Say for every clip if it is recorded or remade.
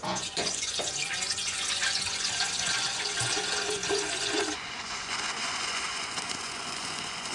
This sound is remade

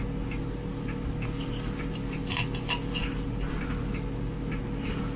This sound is recorded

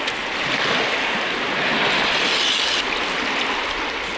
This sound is recorded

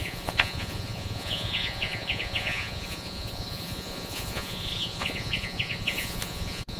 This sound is remade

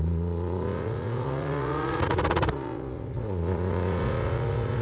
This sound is remade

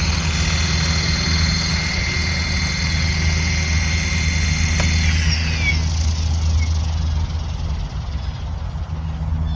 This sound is recorded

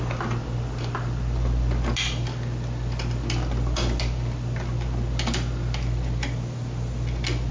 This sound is recorded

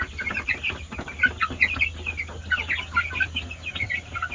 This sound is recorded